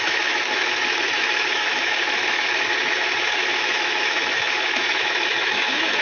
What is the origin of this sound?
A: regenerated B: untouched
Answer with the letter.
A